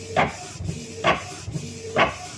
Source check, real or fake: real